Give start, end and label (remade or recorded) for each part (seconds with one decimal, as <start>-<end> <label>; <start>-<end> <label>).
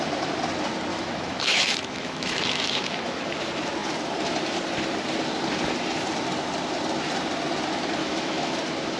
0.0-0.9 recorded; 0.9-3.2 remade; 3.2-8.0 recorded; 8.0-8.6 remade; 8.6-9.0 recorded